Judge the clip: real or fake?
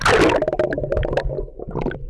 real